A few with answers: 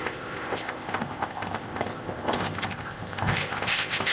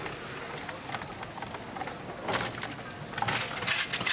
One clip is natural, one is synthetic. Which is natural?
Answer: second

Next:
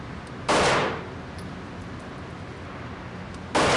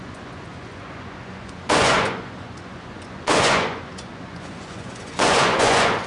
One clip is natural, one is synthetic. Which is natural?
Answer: first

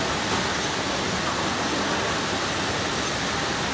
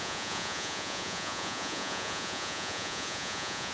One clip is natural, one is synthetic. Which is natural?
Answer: first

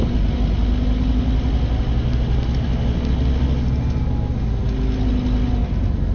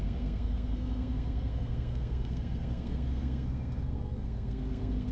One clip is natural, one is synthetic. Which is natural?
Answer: first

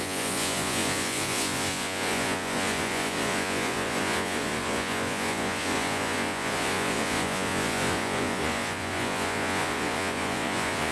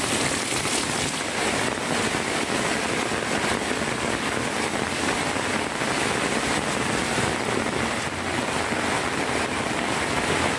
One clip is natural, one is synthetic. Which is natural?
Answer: second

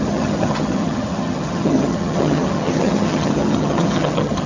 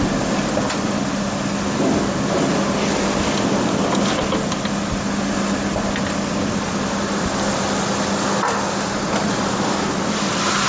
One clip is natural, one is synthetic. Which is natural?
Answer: second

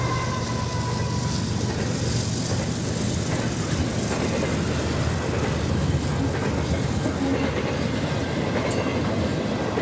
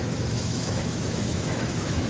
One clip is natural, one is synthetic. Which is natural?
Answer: first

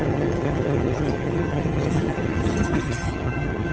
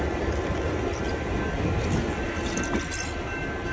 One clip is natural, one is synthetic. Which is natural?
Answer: second